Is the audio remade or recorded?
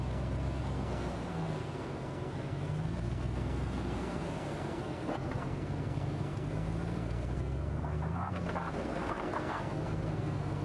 remade